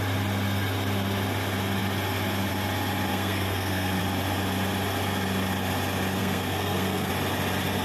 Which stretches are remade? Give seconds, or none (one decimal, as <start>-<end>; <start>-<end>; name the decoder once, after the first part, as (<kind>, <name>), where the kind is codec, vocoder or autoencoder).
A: 3.1-4.0 (codec, SNAC); 6.2-7.1